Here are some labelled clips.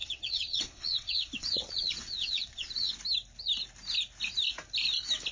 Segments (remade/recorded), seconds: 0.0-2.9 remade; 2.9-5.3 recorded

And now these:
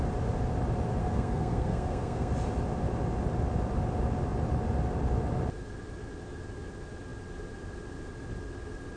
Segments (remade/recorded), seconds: 0.0-1.0 recorded; 1.0-2.3 remade; 2.3-9.0 recorded